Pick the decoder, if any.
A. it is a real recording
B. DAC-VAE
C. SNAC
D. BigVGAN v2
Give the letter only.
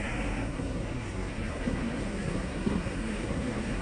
C